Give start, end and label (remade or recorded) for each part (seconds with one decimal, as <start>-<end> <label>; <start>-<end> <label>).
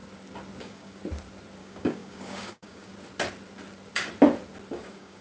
0.0-0.6 recorded; 0.6-1.0 remade; 1.0-1.6 recorded; 1.6-2.9 remade; 2.9-4.7 recorded; 4.7-5.2 remade